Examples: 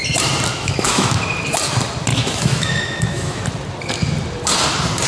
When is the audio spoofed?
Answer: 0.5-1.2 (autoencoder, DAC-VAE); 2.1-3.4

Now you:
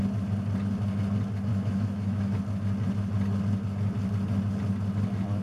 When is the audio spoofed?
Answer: 1.5-2.4 (autoencoder, DAC-VAE)

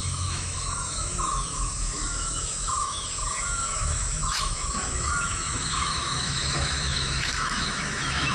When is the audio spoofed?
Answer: 0.0-8.3 (autoencoder, DAC-VAE)

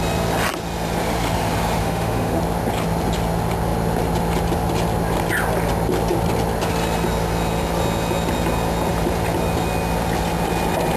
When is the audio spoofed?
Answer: 1.8-2.4 (autoencoder, DAC-VAE)

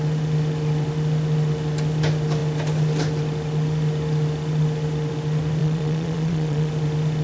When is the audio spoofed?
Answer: 5.6-6.7 (vocoder, Vocos)

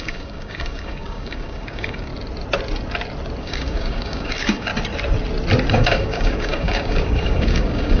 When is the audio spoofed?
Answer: 0.0-2.1 (codec, DAC); 3.4-4.7; 5.7-8.0